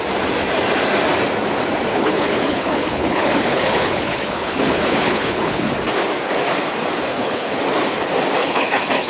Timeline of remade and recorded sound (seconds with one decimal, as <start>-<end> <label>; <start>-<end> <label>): 0.0-1.9 recorded; 1.9-5.7 remade; 5.7-7.1 recorded; 7.1-7.6 remade; 7.6-8.4 recorded; 8.4-9.1 remade